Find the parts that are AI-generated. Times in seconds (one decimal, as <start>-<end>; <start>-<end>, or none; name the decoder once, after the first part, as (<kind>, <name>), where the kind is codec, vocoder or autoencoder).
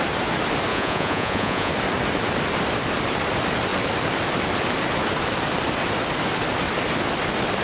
0.7-1.7 (vocoder, Vocos)